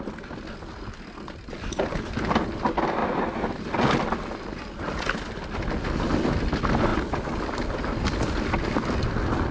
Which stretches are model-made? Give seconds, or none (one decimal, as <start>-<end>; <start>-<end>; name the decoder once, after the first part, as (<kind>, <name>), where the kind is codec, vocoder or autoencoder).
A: none